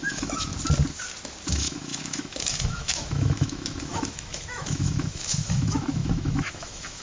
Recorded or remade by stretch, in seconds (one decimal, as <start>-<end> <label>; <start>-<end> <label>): 0.0-0.5 remade; 0.5-1.5 recorded; 1.5-7.0 remade